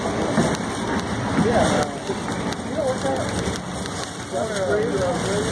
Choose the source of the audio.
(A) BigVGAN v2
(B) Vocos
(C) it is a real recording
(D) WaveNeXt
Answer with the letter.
A